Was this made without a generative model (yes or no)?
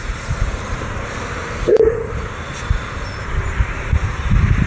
no